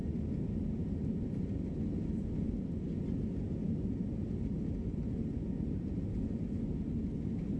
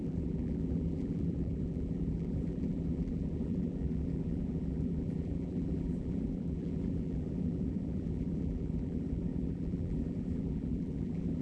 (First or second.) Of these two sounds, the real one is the first